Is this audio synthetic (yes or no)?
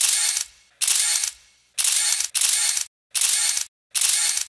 no